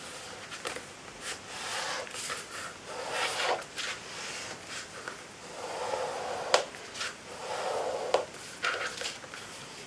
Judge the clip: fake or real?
real